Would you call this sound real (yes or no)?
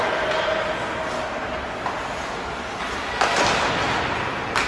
yes